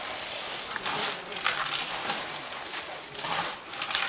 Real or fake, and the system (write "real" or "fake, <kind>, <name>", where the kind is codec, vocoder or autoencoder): real